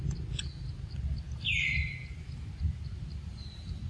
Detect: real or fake real